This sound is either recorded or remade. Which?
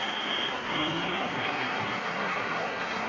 remade